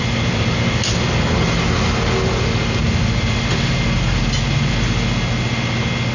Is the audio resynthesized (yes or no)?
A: no